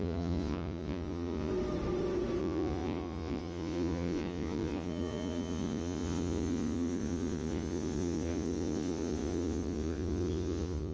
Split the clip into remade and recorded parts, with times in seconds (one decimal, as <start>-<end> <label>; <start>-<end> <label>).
0.0-1.5 remade; 1.5-2.4 recorded; 2.4-10.9 remade